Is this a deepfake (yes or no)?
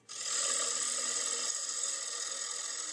no